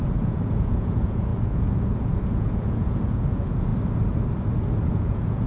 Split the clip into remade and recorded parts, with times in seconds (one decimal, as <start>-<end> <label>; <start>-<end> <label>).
0.0-3.7 remade; 3.7-4.9 recorded; 4.9-5.5 remade